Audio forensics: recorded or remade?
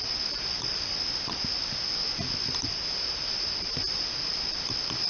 recorded